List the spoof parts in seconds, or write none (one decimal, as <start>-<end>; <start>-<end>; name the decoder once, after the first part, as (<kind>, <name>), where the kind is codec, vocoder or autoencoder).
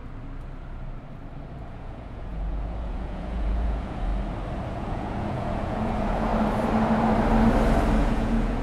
1.6-4.1 (vocoder, Vocos); 4.7-6.3; 8.0-8.6